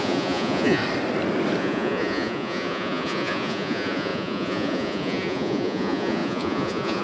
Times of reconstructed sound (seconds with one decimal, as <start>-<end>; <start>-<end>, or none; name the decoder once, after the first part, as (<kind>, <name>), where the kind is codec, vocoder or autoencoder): 0.0-0.8 (vocoder, Vocos); 1.6-7.0